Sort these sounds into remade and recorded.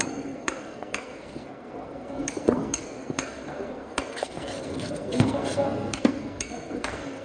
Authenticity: remade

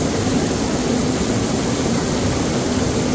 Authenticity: recorded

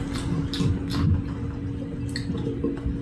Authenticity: recorded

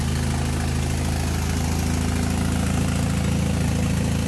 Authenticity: recorded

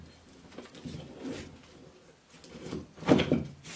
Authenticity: recorded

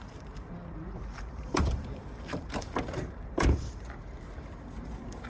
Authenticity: remade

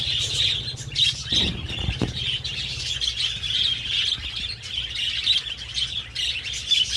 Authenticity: recorded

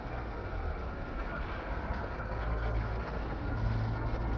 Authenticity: remade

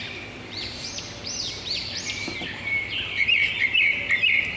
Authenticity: remade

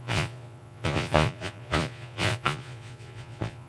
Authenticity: remade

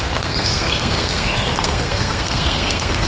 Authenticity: remade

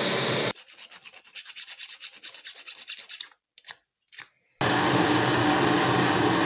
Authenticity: recorded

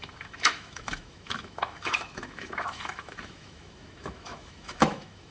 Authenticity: remade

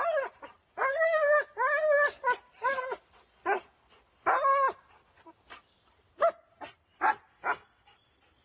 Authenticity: recorded